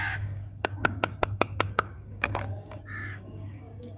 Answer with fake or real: fake